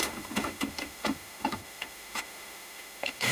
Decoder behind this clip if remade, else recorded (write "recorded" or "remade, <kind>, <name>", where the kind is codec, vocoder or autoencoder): remade, autoencoder, DAC-VAE